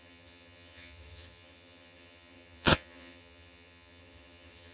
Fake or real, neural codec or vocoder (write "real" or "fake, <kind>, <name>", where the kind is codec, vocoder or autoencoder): fake, vocoder, HiFi-GAN